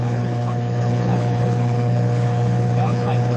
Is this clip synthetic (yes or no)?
yes